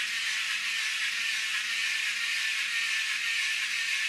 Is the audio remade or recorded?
recorded